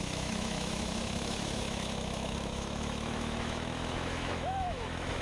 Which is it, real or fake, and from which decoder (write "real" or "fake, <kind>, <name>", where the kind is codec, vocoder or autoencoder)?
fake, autoencoder, DAC-VAE